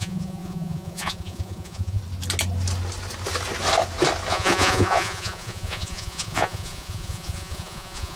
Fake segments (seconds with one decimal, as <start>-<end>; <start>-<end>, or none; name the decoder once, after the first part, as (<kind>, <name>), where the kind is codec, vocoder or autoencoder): 0.0-2.0 (vocoder, Vocos); 4.3-8.2